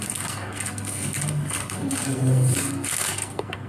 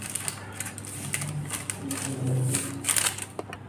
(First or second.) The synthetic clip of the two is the first